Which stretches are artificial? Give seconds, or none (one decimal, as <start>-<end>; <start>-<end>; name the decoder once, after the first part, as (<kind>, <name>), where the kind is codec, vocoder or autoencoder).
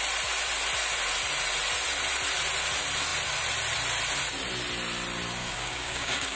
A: 5.4-6.4 (codec, DAC)